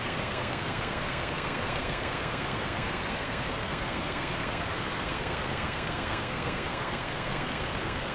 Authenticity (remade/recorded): remade